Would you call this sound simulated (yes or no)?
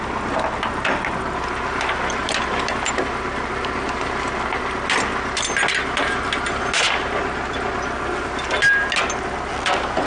no